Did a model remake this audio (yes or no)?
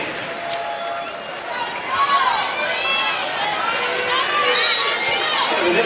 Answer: no